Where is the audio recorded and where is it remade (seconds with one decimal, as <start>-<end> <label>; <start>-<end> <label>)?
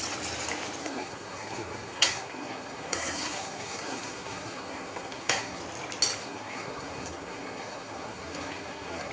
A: 0.0-0.8 recorded; 0.8-5.6 remade; 5.6-6.2 recorded; 6.2-9.1 remade